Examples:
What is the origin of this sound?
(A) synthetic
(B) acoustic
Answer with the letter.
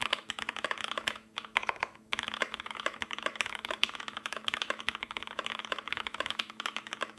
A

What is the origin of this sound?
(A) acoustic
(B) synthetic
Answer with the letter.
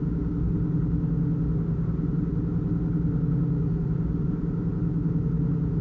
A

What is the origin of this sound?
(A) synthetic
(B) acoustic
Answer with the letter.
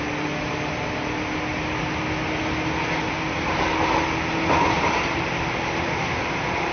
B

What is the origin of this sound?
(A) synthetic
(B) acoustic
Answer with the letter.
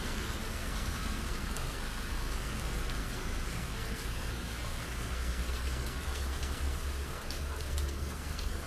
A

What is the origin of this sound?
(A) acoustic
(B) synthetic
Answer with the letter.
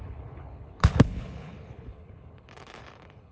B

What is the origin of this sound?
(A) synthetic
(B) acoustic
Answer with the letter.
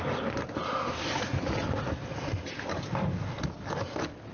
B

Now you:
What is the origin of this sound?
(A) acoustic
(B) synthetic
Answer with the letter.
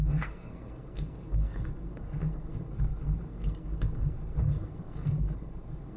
B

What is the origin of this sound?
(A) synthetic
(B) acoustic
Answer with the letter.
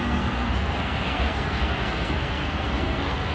A